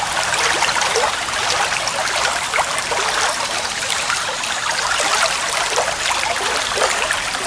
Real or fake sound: real